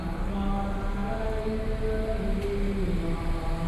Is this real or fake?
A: real